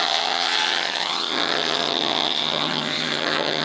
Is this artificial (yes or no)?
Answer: yes